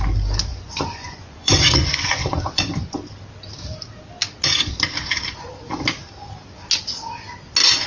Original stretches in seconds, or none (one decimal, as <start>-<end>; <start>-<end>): 0.0-0.5; 2.7-7.9